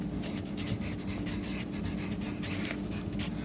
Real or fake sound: real